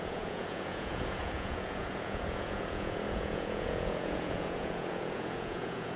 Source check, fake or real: fake